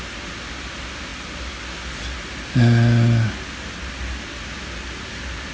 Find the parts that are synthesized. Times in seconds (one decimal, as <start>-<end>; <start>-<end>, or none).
none